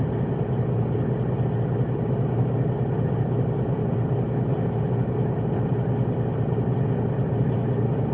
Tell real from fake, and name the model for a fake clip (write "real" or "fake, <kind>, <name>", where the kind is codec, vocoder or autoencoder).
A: real